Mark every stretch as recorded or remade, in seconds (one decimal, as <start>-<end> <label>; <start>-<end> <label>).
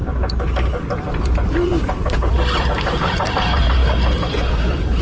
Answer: 0.0-1.2 recorded; 1.2-3.8 remade; 3.8-4.5 recorded; 4.5-5.0 remade